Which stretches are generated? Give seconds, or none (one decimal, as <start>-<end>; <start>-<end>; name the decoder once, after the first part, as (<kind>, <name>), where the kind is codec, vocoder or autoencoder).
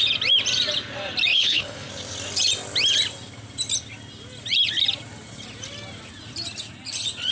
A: 1.3-1.9 (codec, HILCodec)